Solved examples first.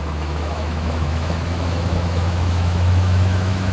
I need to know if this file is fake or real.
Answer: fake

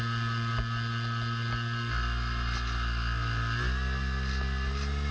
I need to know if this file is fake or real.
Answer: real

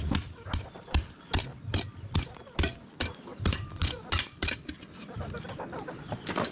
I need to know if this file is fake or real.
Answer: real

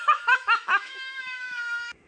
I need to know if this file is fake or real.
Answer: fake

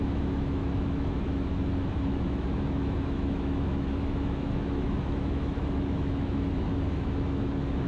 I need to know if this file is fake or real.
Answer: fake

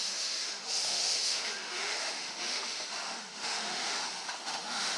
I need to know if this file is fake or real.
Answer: fake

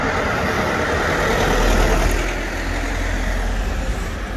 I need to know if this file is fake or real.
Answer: real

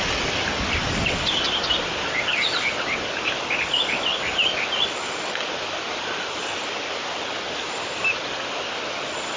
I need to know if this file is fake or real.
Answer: real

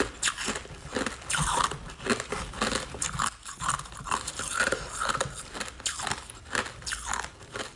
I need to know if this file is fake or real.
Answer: real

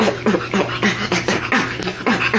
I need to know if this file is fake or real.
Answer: real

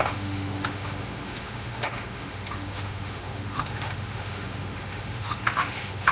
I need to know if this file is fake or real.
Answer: fake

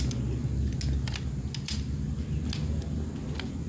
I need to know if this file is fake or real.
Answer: real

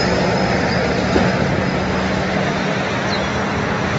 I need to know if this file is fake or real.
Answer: real